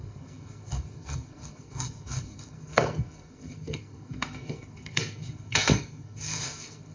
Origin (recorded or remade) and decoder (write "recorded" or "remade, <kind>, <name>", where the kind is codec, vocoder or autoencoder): remade, codec, SNAC